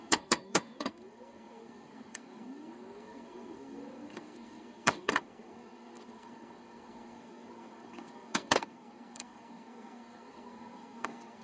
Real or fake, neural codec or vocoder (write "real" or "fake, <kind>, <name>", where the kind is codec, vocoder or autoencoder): fake, codec, SNAC